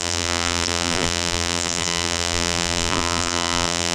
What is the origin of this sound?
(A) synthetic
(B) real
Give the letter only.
A